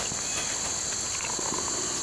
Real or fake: real